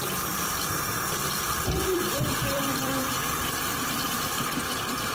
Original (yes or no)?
no